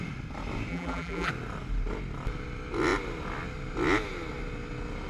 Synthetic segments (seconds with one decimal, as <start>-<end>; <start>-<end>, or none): 0.7-1.3